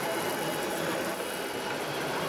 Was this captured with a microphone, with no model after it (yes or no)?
yes